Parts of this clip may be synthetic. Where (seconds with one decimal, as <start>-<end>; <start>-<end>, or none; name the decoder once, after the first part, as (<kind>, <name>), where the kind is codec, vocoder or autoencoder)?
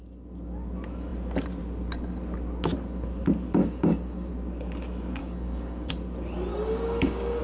3.6-4.3 (codec, DAC); 5.2-5.9; 6.5-7.4